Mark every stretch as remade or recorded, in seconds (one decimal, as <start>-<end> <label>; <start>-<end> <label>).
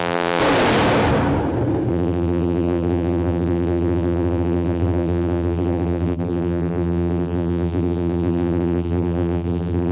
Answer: 0.0-0.4 remade; 0.4-1.9 recorded; 1.9-9.9 remade